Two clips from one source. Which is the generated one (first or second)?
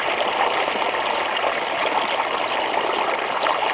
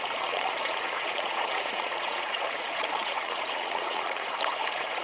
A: second